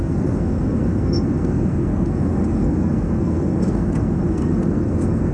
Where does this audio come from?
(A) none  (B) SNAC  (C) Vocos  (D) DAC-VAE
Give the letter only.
B